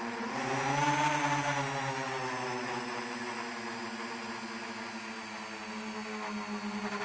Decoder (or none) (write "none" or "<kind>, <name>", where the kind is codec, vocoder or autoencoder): none